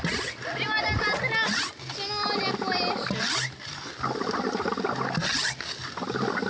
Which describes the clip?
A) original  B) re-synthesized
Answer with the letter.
A